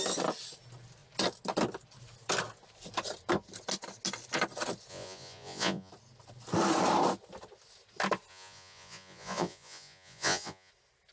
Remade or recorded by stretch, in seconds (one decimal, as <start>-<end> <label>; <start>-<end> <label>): 0.0-4.9 recorded; 4.9-5.9 remade; 5.9-8.3 recorded; 8.3-10.7 remade; 10.7-11.1 recorded